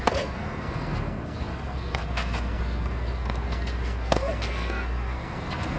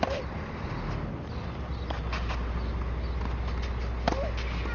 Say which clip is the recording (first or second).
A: second